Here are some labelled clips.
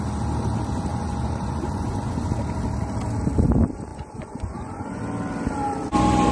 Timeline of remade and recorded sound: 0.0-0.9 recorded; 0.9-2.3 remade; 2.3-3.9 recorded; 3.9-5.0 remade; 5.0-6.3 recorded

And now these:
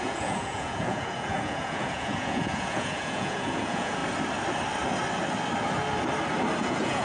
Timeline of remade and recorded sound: 0.0-4.0 remade; 4.0-6.6 recorded; 6.6-7.0 remade

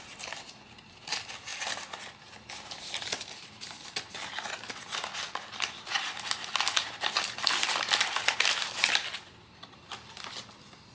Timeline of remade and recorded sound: 0.0-10.9 recorded

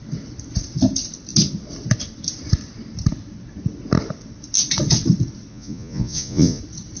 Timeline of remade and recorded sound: 0.0-5.5 recorded; 5.5-6.6 remade; 6.6-7.0 recorded

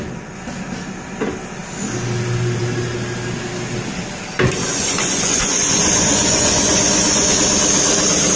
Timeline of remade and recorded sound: 0.0-4.6 recorded; 4.6-7.3 remade; 7.3-8.4 recorded